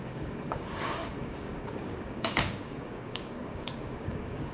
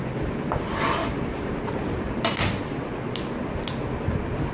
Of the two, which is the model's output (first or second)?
first